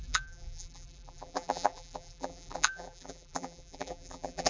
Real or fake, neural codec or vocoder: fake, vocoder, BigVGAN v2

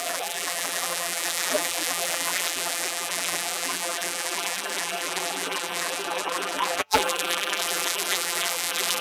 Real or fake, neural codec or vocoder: fake, vocoder, BigVGAN v2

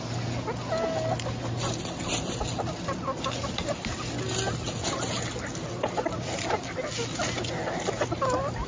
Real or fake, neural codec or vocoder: real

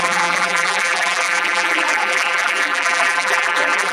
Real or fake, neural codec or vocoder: fake, vocoder, BigVGAN v2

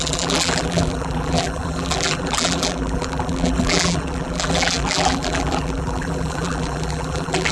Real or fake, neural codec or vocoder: fake, vocoder, BigVGAN v2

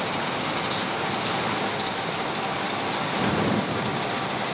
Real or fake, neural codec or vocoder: real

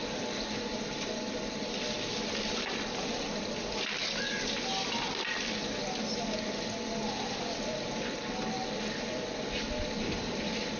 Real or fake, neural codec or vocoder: real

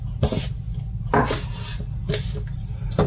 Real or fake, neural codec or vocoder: real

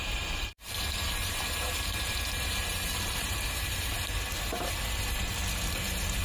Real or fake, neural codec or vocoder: fake, vocoder, BigVGAN v2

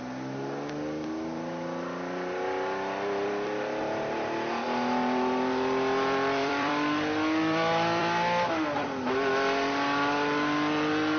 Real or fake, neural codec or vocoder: fake, vocoder, BigVGAN v2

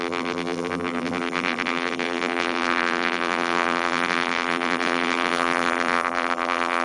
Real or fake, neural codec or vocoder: fake, vocoder, BigVGAN v2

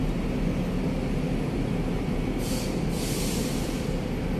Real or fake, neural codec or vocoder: real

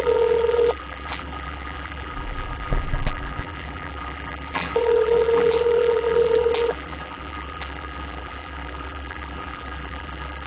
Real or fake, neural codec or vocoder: fake, vocoder, BigVGAN v2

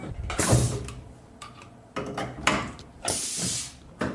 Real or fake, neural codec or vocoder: real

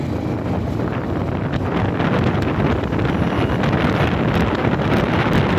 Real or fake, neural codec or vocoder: real